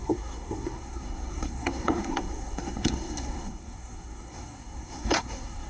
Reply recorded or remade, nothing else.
remade